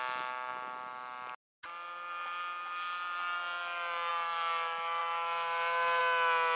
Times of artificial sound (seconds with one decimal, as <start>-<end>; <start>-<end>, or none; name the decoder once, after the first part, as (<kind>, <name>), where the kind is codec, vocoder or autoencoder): none